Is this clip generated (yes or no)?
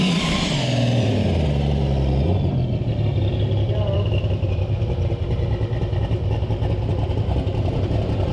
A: yes